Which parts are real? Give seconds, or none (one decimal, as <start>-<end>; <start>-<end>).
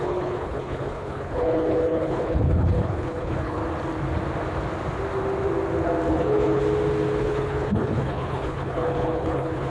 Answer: 3.6-6.1; 6.6-7.2